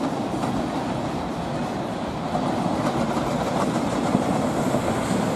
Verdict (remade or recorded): recorded